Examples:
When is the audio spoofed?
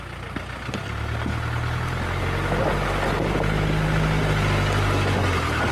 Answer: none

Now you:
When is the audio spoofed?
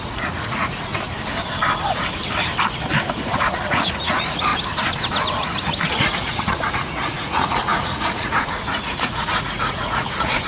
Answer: 0.0-0.9 (vocoder, Vocos); 3.1-4.5; 5.9-10.5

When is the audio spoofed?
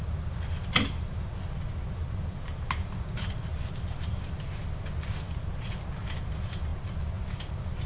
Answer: none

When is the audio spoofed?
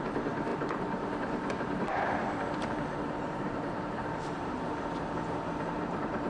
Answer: 0.0-6.3 (vocoder, BigVGAN v2)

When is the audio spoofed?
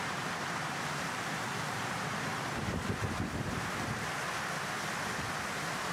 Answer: 0.0-2.3 (vocoder, BigVGAN v2); 5.5-5.9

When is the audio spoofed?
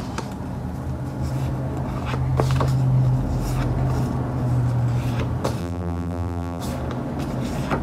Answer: 5.6-6.6 (vocoder, BigVGAN v2)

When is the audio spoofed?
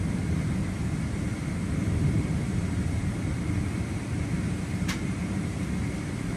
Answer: 1.8-5.6 (vocoder, BigVGAN v2)